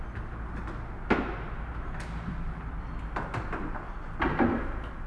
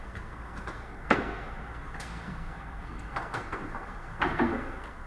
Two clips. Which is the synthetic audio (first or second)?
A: second